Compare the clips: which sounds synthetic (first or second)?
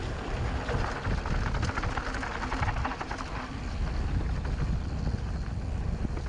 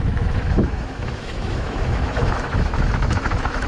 second